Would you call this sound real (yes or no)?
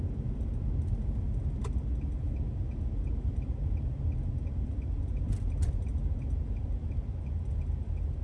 yes